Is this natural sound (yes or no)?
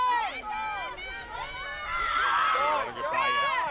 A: yes